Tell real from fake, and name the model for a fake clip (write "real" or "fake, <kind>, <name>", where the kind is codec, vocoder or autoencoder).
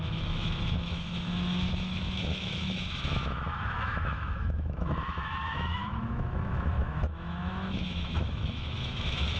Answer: fake, autoencoder, DAC-VAE